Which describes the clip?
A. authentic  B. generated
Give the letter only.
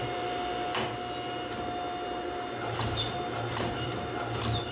A